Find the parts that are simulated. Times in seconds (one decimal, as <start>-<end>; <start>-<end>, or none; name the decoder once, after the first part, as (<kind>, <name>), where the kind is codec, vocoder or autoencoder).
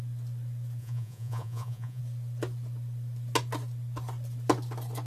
0.8-2.0 (vocoder, Vocos)